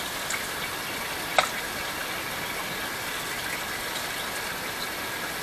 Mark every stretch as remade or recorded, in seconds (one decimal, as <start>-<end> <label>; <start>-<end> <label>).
0.0-5.4 recorded